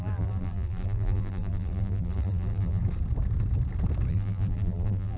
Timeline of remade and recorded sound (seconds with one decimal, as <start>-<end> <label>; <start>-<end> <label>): 0.0-2.8 remade; 2.8-4.1 recorded; 4.1-5.2 remade